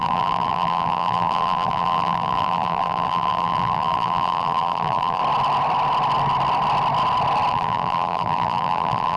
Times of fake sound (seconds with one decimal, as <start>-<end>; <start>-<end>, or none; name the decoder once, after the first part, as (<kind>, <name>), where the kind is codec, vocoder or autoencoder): 0.0-5.2 (vocoder, BigVGAN v2); 7.5-9.2